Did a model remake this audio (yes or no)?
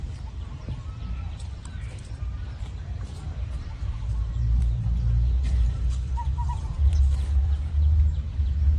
yes